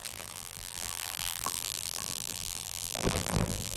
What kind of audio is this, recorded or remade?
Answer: remade